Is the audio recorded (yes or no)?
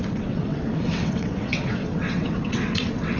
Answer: no